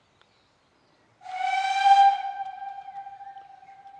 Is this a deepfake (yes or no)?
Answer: no